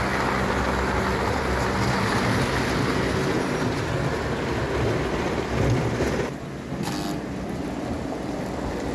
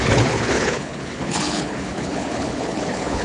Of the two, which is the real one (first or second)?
first